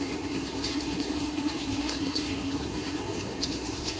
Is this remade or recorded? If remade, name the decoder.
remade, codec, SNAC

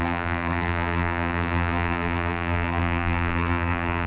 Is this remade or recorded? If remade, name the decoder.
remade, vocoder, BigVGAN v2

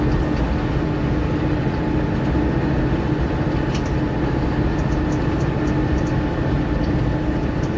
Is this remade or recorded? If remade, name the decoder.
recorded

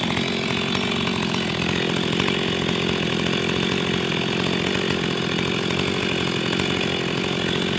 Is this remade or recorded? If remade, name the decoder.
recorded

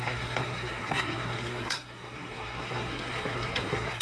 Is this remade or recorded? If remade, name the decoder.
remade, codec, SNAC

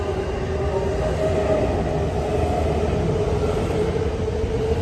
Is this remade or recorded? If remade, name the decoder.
recorded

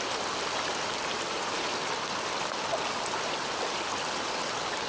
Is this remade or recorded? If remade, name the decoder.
recorded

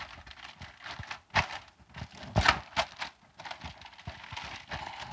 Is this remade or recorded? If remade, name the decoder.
recorded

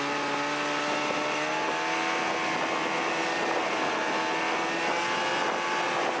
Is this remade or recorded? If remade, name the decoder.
recorded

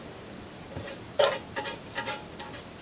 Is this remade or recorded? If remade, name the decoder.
recorded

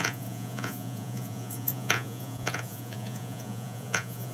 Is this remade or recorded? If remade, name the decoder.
remade, vocoder, Vocos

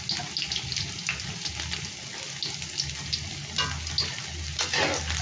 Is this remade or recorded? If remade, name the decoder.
recorded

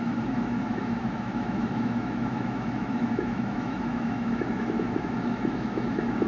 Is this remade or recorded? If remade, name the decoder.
remade, autoencoder, DAC-VAE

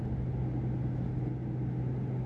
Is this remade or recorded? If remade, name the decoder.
recorded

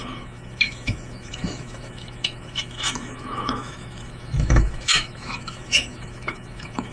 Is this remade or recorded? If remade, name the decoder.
remade, autoencoder, DAC-VAE